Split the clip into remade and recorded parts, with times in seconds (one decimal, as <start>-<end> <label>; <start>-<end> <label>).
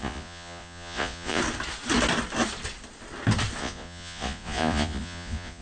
0.0-1.4 remade; 1.4-3.6 recorded; 3.6-5.6 remade